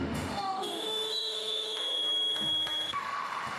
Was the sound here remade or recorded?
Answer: remade